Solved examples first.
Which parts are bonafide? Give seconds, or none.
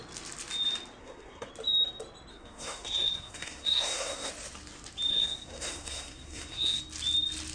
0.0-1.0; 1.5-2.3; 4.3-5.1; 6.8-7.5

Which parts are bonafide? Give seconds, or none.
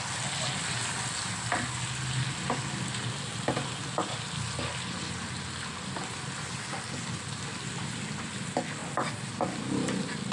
0.0-10.3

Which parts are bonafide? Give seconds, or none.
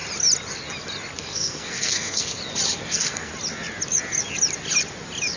0.0-1.2; 2.4-2.9; 3.3-5.4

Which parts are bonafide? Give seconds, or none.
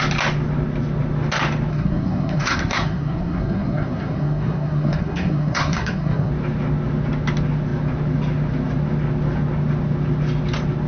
0.0-1.7; 6.3-10.9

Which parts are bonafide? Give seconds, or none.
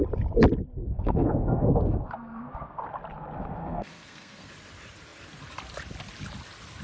0.0-0.8; 2.8-3.6; 4.5-6.8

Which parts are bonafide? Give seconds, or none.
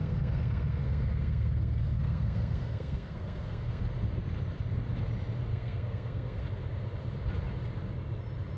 3.8-5.5; 6.4-8.6